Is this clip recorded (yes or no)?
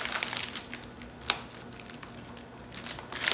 yes